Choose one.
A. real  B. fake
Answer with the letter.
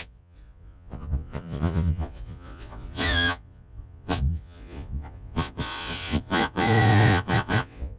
B